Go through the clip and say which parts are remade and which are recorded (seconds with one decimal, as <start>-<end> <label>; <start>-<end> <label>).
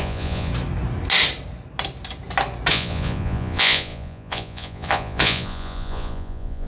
0.0-0.5 remade; 0.5-2.7 recorded; 2.7-6.7 remade